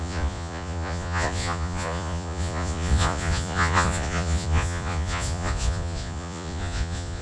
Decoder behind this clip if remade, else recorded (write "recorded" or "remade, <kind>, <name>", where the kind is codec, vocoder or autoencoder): remade, vocoder, Vocos